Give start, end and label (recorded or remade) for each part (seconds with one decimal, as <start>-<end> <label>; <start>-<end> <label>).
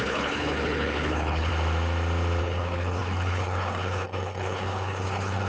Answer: 0.0-1.5 remade; 1.5-2.4 recorded; 2.4-5.5 remade